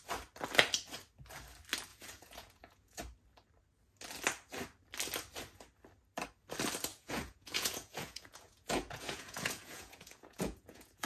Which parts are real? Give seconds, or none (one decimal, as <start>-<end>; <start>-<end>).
0.0-1.9; 3.0-6.9